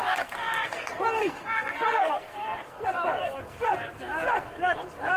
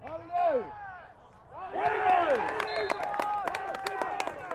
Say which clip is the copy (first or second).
first